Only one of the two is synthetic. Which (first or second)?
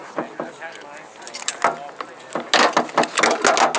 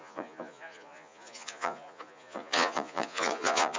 second